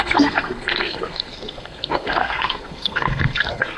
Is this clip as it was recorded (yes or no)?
no